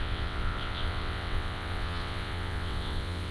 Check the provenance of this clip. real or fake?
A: fake